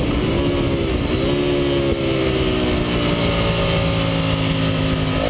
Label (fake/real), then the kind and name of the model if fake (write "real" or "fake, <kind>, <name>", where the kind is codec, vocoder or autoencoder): real